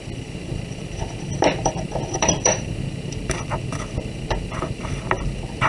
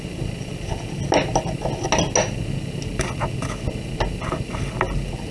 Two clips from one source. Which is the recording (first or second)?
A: second